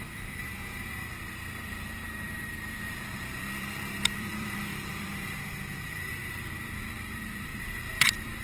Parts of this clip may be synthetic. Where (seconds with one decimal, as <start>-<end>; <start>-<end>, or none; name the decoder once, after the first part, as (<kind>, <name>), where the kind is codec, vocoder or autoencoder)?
0.0-0.4 (vocoder, BigVGAN v2); 1.7-6.2; 6.8-8.4